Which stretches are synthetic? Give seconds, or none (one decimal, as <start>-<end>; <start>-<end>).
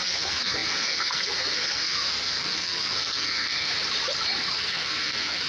0.0-3.7; 4.5-5.5